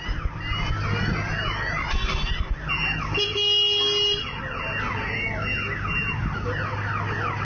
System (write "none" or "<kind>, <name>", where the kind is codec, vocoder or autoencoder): none